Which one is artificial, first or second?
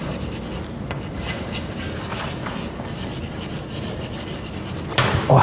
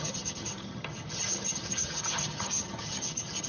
second